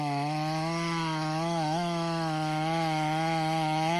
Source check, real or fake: fake